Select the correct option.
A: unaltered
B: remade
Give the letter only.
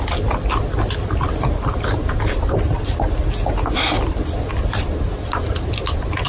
A